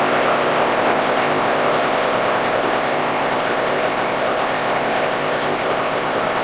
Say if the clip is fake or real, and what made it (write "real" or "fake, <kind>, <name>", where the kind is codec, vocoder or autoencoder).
fake, codec, ZipCodec